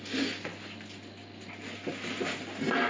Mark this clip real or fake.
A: real